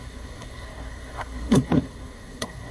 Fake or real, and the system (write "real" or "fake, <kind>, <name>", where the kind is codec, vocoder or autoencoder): fake, codec, SNAC